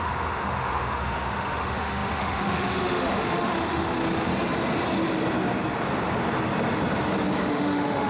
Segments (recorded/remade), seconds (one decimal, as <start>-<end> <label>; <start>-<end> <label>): 0.0-4.3 remade; 4.3-7.5 recorded; 7.5-8.1 remade